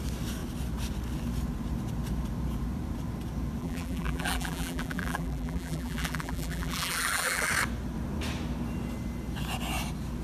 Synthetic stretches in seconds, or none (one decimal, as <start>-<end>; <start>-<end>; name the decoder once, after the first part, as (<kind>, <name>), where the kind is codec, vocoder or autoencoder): 3.6-7.5 (vocoder, BigVGAN v2)